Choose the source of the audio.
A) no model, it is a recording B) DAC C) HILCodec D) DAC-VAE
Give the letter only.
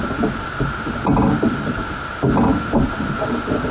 A